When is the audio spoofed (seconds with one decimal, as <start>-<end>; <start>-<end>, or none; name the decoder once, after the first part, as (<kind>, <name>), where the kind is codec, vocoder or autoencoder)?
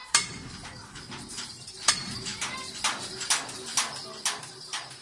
0.0-2.3 (vocoder, BigVGAN v2); 4.4-5.0